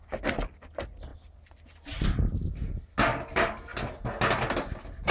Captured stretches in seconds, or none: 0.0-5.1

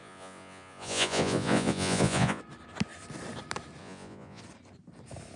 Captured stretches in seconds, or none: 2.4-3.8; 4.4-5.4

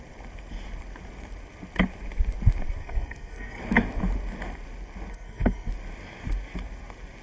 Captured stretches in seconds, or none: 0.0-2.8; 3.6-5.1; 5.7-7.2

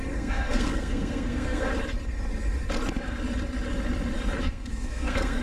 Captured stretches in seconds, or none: 1.7-4.4

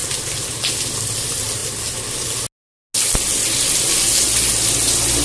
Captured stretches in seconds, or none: 0.0-5.2

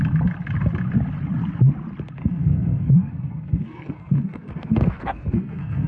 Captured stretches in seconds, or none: 0.0-2.2

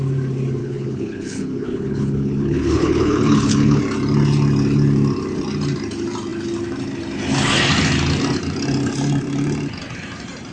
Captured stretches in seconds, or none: 0.0-0.6; 3.8-10.5